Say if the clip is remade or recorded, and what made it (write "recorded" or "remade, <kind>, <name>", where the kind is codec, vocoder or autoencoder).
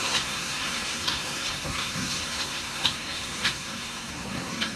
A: remade, codec, SNAC